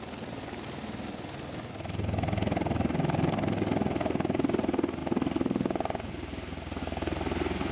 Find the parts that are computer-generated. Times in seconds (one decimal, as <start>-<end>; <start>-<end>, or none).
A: none